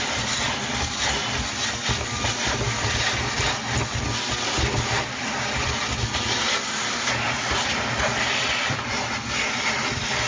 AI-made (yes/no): no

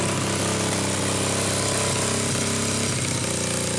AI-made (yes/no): no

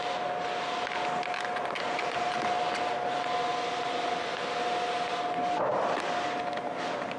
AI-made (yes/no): no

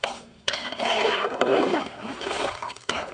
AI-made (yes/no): yes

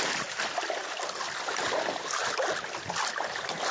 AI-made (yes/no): no